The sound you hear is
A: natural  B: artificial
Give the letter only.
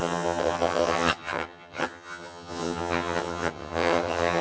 B